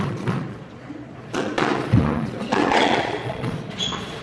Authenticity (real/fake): fake